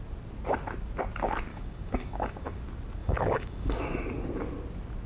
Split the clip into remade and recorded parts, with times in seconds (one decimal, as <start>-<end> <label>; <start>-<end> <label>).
0.0-1.5 recorded; 1.5-2.6 remade; 2.6-3.0 recorded; 3.0-4.0 remade; 4.0-5.1 recorded